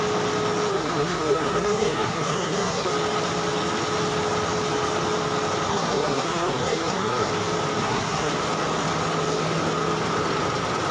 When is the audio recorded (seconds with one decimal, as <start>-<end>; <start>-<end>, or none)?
0.0-0.7; 2.9-5.7; 7.3-7.8; 8.3-10.9